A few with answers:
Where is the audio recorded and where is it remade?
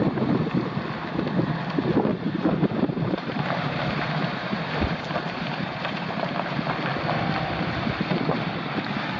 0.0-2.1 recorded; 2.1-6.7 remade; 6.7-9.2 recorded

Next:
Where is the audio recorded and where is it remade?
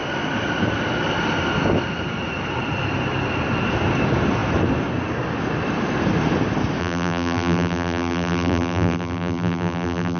0.0-6.8 recorded; 6.8-10.2 remade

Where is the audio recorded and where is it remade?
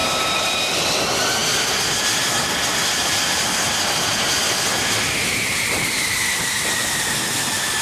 0.0-0.7 remade; 0.7-7.8 recorded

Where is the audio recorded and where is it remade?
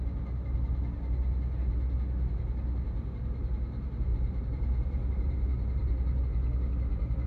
0.0-4.1 recorded; 4.1-6.2 remade; 6.2-7.3 recorded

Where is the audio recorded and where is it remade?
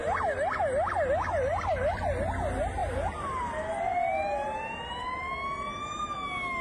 0.0-1.5 recorded; 1.5-2.1 remade; 2.1-2.8 recorded; 2.8-4.1 remade; 4.1-6.6 recorded